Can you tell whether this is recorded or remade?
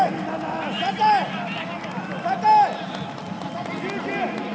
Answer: recorded